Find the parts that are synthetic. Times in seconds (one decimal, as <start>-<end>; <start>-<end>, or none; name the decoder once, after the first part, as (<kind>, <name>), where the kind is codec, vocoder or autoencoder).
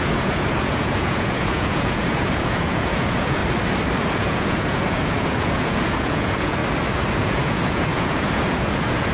0.0-3.4 (vocoder, Vocos); 4.0-6.6; 7.1-9.1